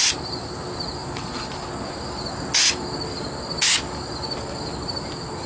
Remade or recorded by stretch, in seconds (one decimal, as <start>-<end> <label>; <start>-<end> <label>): 0.0-1.0 recorded; 1.0-1.7 remade; 1.7-5.5 recorded